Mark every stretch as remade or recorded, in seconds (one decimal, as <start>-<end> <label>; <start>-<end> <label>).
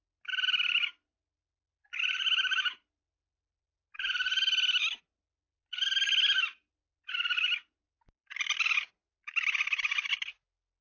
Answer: 0.0-3.9 recorded; 3.9-5.0 remade; 5.0-10.8 recorded